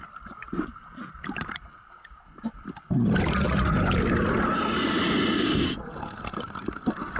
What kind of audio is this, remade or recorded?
recorded